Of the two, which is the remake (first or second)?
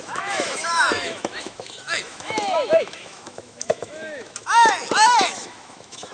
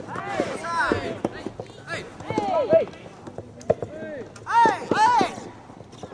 first